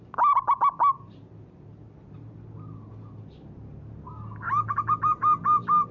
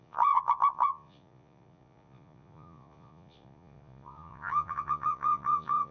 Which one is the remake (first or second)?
second